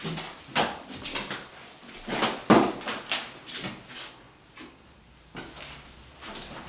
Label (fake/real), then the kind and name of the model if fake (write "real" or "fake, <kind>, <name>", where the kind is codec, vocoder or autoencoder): real